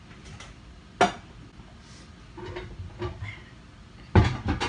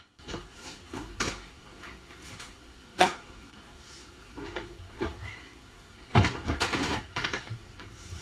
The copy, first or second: second